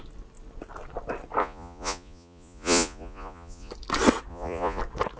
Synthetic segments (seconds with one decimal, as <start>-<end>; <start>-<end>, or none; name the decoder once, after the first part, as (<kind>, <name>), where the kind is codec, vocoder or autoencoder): 1.4-3.7 (vocoder, Vocos); 4.3-4.8